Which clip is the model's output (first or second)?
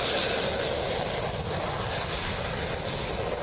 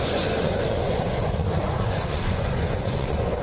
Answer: second